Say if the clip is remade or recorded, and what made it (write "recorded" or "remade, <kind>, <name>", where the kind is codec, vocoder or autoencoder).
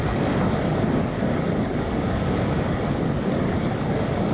remade, codec, DAC